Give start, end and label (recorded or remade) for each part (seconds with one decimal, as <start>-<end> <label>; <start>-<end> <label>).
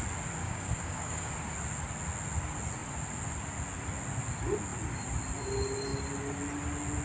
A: 0.0-0.4 recorded; 0.4-1.3 remade; 1.3-7.0 recorded